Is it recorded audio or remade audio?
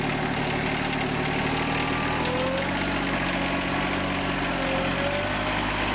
recorded